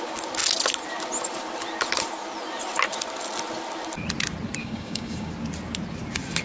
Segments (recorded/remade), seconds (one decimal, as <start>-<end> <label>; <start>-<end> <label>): 0.0-4.6 recorded; 4.6-5.3 remade; 5.3-6.4 recorded